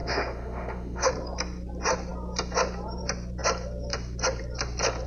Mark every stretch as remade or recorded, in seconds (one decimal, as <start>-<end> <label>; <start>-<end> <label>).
0.0-1.1 remade; 1.1-5.1 recorded